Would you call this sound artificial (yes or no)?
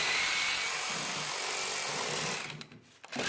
no